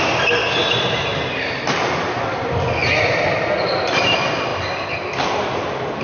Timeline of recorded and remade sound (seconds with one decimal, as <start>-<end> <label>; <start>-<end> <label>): 0.0-2.8 recorded; 2.8-3.5 remade; 3.5-6.0 recorded